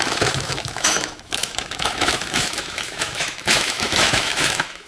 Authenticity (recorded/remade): remade